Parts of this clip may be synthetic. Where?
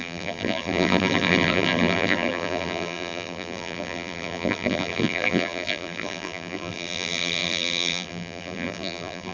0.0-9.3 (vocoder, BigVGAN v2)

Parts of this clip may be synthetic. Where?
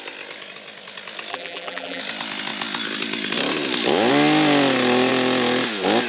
1.3-2.0 (vocoder, BigVGAN v2)